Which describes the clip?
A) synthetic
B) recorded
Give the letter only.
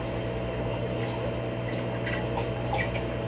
B